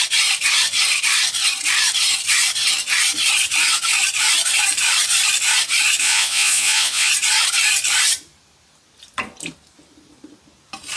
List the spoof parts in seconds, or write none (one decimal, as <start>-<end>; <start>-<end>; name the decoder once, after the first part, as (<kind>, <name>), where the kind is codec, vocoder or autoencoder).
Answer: 6.0-7.1 (vocoder, Vocos)